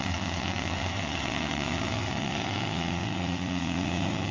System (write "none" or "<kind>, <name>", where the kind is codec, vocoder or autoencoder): vocoder, WaveNeXt